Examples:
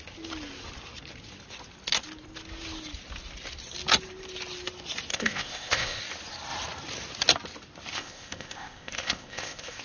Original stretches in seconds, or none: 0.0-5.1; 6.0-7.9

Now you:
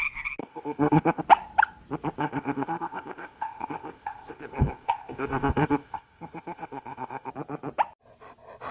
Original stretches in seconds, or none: 0.0-0.4; 1.2-2.2; 7.3-8.7

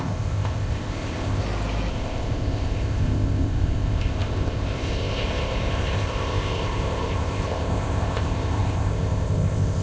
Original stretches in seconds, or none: 1.4-1.9

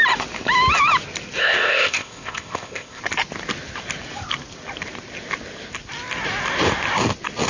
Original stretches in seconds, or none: 0.0-1.4; 3.0-7.5

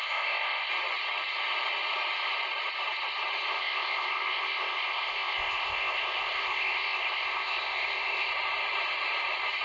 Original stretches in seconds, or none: 0.7-3.5; 8.3-9.6

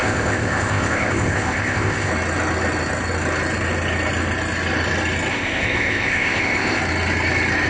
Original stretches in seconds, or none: 2.1-5.3; 6.8-7.7